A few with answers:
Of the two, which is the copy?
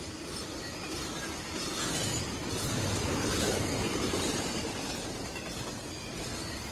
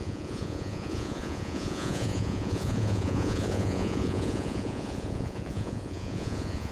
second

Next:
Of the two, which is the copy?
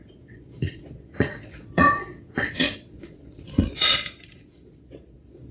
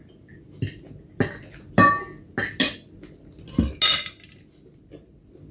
first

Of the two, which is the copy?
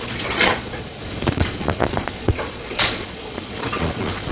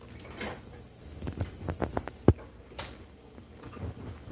first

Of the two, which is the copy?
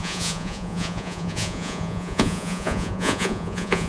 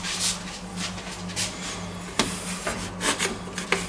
first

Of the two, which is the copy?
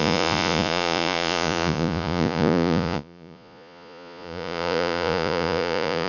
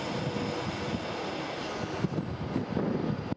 first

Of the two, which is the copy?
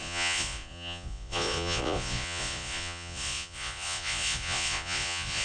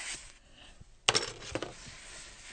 first